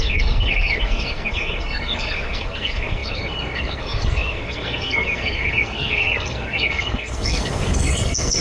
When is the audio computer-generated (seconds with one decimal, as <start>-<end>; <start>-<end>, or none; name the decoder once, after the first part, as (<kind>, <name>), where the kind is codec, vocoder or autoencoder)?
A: 0.0-8.4 (codec, SNAC)